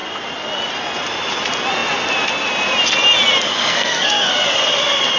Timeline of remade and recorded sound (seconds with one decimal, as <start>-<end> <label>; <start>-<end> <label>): 0.0-3.5 recorded; 3.5-4.3 remade; 4.3-5.2 recorded